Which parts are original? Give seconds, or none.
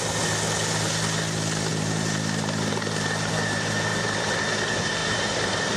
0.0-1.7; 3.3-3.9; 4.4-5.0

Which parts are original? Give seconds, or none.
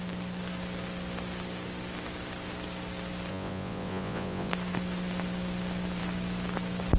0.0-3.3; 4.5-7.0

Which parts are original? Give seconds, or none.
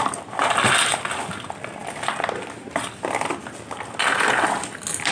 0.0-5.1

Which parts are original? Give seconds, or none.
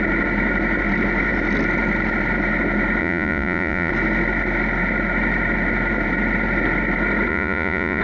0.0-3.0; 3.9-7.3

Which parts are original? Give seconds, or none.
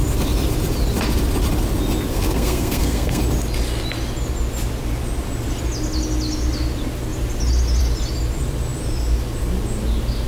0.0-2.1; 3.2-10.3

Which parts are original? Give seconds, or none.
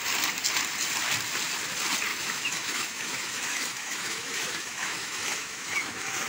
0.0-2.1